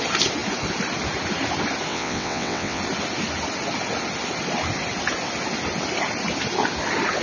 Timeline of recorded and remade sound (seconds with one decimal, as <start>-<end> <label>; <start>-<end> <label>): 0.0-1.9 recorded; 1.9-2.8 remade; 2.8-7.2 recorded